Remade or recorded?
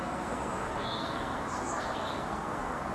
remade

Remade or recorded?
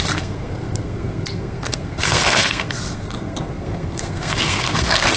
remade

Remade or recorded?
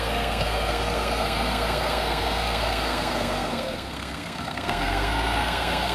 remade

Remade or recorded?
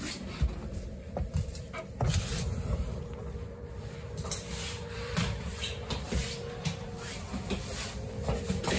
remade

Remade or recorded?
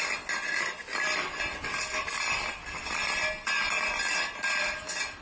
recorded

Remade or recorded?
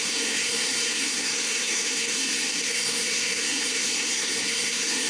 remade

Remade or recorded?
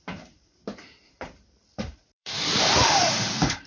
remade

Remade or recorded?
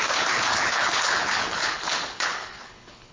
remade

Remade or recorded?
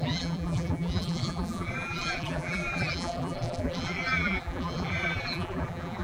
remade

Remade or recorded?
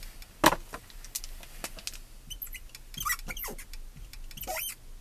recorded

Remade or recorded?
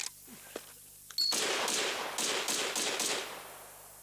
recorded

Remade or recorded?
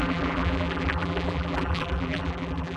remade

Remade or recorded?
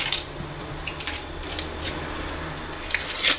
recorded